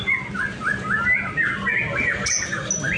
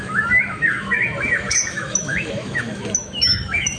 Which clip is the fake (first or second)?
second